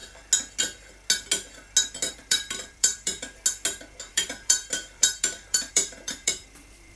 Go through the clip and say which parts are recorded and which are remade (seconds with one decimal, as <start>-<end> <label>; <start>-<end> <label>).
0.0-2.1 recorded; 2.1-3.1 remade; 3.1-4.1 recorded; 4.1-7.0 remade